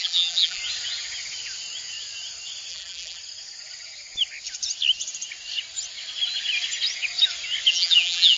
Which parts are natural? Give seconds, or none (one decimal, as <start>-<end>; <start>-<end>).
0.6-2.7; 3.2-7.7

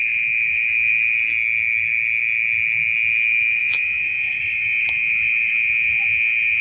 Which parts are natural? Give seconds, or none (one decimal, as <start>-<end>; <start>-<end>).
0.0-3.6; 4.4-6.6

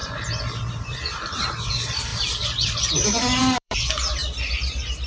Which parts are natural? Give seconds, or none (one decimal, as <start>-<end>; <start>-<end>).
0.0-0.7; 2.1-3.4; 4.2-5.1

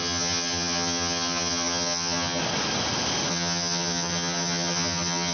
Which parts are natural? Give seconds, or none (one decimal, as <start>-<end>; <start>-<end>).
2.4-3.3